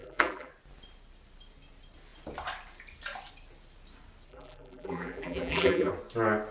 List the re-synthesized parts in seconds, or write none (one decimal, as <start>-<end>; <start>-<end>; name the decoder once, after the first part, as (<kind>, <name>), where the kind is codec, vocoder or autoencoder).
0.0-0.5 (vocoder, BigVGAN v2); 4.3-5.9